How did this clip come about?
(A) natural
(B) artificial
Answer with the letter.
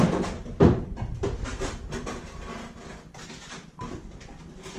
A